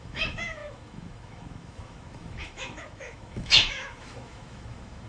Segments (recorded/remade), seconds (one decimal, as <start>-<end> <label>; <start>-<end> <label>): 0.0-5.1 remade